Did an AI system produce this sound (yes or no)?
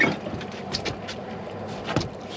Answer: no